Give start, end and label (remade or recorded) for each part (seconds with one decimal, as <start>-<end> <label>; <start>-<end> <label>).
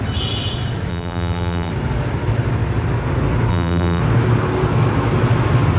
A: 0.0-0.9 recorded; 0.9-1.7 remade; 1.7-3.5 recorded; 3.5-4.0 remade; 4.0-5.8 recorded